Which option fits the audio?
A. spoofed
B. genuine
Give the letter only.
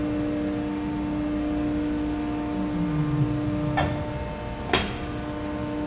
B